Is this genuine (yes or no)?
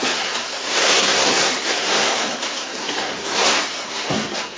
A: no